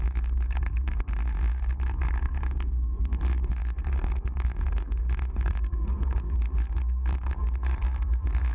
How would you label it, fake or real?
fake